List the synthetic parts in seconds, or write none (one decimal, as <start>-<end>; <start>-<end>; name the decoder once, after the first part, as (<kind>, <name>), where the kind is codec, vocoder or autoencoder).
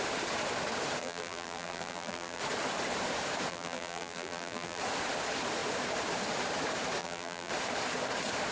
1.0-2.4 (vocoder, BigVGAN v2); 3.5-4.8; 7.0-7.5